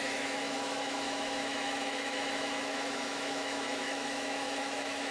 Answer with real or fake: fake